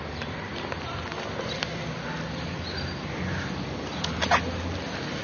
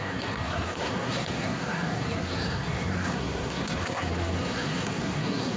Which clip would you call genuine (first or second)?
first